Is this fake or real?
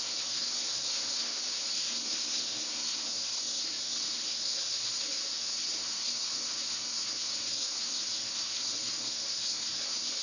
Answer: fake